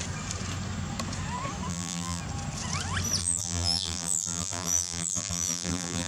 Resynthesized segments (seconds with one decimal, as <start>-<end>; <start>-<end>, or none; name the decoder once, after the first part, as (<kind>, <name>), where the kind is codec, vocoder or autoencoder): 1.7-2.2 (vocoder, BigVGAN v2); 3.2-6.1